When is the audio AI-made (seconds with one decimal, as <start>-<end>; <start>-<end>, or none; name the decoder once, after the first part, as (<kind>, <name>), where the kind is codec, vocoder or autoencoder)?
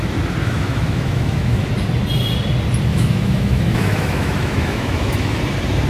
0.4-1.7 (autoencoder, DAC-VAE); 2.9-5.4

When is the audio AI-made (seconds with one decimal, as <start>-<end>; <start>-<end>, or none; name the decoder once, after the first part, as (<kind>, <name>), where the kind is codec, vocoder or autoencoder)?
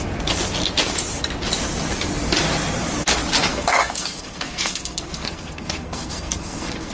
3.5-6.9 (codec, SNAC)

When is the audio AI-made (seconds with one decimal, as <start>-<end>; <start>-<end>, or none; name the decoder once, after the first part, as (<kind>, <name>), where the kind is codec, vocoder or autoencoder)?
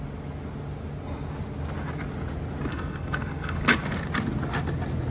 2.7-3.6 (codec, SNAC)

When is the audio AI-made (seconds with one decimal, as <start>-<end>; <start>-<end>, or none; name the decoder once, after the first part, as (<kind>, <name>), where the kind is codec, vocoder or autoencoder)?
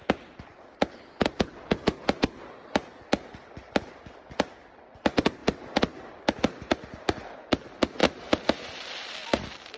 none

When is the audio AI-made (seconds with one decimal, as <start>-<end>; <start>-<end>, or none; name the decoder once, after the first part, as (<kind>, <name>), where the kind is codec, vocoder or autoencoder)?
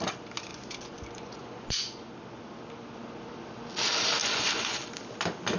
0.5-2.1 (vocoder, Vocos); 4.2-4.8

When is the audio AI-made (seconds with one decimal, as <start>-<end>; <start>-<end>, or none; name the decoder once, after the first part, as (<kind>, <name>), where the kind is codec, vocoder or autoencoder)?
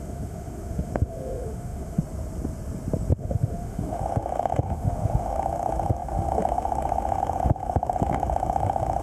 0.0-2.0 (autoencoder, DAC-VAE); 3.2-9.0